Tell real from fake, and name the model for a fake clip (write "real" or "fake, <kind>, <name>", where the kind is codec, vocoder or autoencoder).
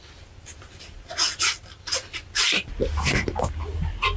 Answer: real